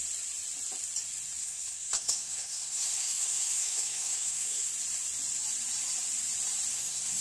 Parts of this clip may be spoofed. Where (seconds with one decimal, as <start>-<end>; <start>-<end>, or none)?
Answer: 1.4-4.7; 6.7-7.2